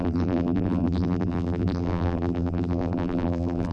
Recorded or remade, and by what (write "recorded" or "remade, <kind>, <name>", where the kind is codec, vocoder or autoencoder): remade, vocoder, BigVGAN v2